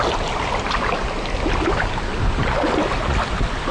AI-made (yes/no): no